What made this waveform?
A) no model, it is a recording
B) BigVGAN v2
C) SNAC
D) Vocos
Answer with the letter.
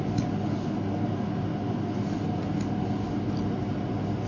A